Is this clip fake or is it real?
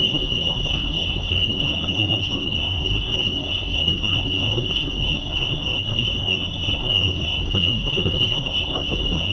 fake